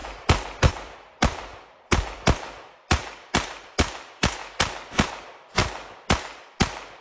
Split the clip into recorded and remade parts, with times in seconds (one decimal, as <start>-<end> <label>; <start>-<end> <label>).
0.0-0.7 recorded; 0.7-4.4 remade; 4.4-5.1 recorded; 5.1-5.6 remade; 5.6-6.2 recorded; 6.2-7.0 remade